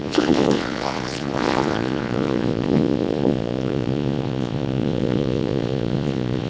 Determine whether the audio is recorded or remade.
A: remade